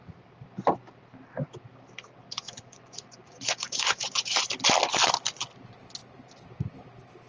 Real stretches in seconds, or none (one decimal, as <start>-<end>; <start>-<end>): 0.0-2.2; 4.5-7.3